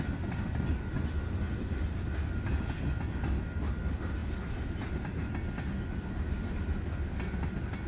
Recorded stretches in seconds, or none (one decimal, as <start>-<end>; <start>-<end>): 0.0-7.9

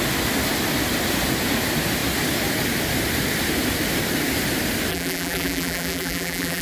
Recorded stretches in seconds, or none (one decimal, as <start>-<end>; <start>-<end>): 0.0-4.9

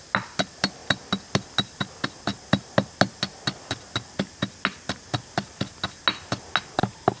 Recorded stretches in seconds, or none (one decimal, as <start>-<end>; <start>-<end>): 0.0-7.2

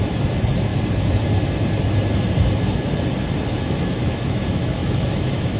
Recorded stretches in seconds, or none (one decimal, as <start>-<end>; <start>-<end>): 0.7-3.5

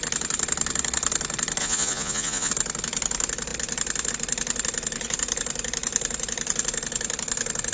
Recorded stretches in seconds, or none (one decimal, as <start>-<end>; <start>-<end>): 0.0-1.6; 2.5-7.7

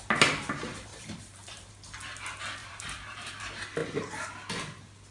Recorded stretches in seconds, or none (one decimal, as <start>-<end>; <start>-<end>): 0.0-0.9; 1.7-2.6; 3.4-5.1